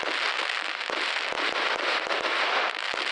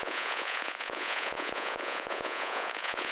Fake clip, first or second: second